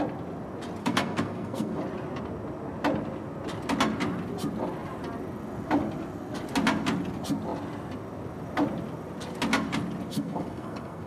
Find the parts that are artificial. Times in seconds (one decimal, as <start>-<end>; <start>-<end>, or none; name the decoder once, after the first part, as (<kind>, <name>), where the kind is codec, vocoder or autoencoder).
0.8-1.8 (codec, SNAC); 10.1-11.1